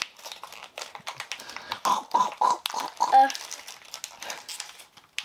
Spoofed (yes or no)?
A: no